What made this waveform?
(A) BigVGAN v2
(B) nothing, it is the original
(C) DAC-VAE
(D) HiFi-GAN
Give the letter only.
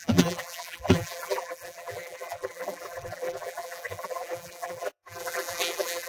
A